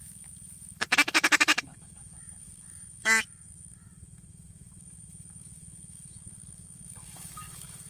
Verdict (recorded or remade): remade